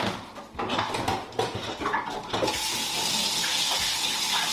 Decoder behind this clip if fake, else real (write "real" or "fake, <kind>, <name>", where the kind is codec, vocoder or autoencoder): real